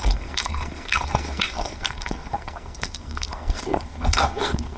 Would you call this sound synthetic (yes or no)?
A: yes